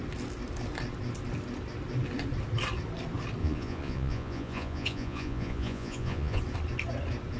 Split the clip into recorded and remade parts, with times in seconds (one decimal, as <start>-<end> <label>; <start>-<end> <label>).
0.0-3.4 recorded; 3.4-6.4 remade; 6.4-7.4 recorded